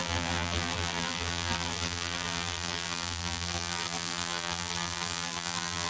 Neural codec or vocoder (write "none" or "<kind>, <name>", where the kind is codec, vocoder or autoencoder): vocoder, BigVGAN v2